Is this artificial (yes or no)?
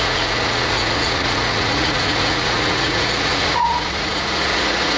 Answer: yes